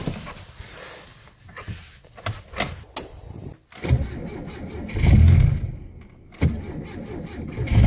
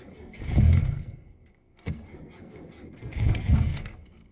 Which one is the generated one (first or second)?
second